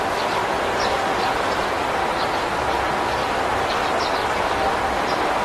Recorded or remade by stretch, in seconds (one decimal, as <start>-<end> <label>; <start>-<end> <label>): 0.0-4.2 remade; 4.2-4.8 recorded; 4.8-5.4 remade